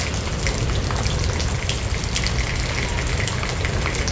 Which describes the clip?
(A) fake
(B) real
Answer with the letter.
B